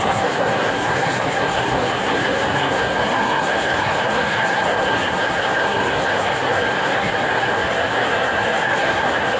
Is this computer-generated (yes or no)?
yes